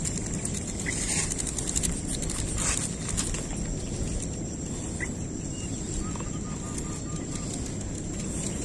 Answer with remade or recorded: recorded